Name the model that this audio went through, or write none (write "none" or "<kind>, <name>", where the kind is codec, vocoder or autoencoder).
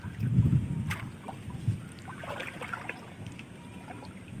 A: vocoder, BigVGAN v2